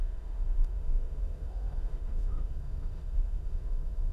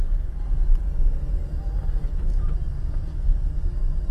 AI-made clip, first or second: first